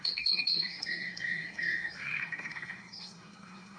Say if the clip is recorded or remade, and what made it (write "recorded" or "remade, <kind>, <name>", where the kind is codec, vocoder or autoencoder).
remade, codec, SNAC